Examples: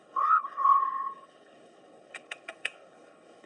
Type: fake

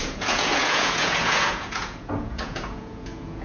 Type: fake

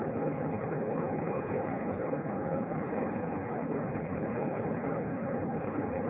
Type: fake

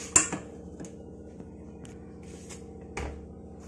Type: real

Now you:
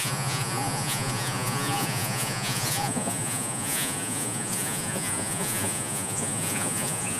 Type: fake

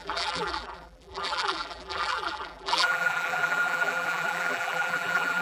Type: fake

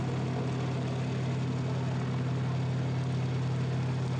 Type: real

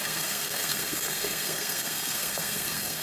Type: fake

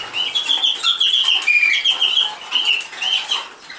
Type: real